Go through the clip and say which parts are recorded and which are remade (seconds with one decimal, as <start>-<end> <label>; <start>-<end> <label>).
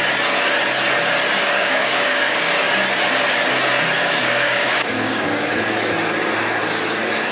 0.0-1.4 recorded; 1.4-2.5 remade; 2.5-4.0 recorded; 4.0-5.5 remade; 5.5-7.3 recorded